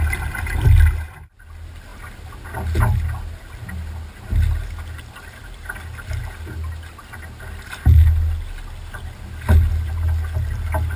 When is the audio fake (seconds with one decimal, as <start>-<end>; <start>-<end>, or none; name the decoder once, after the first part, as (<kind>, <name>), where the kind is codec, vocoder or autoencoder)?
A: none